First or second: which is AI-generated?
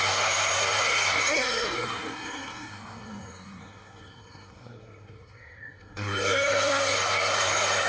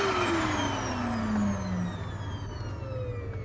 first